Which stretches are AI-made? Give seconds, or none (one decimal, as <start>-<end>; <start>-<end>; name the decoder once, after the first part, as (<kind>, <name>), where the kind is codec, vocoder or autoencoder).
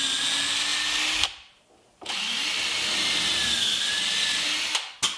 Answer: none